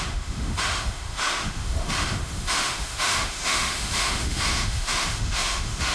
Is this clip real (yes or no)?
no